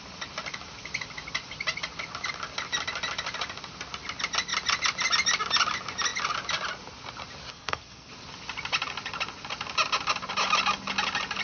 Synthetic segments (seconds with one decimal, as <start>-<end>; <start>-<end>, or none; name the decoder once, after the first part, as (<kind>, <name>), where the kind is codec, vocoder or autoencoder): 7.5-8.1 (codec, SNAC)